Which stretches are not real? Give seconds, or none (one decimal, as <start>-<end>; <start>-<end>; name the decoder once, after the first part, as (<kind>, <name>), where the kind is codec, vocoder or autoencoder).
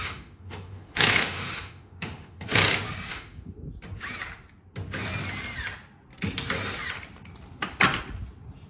0.0-2.6 (autoencoder, DAC-VAE); 3.1-3.6